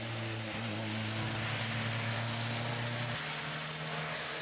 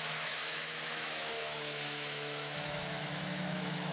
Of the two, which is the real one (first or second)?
first